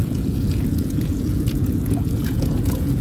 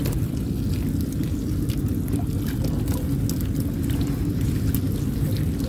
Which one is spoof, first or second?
first